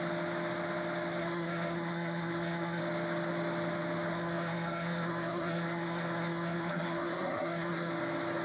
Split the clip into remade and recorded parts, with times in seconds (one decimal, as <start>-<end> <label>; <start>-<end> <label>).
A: 0.0-1.2 recorded; 1.2-2.8 remade; 2.8-4.1 recorded; 4.1-7.9 remade; 7.9-8.4 recorded